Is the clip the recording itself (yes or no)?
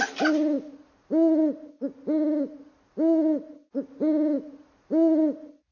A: yes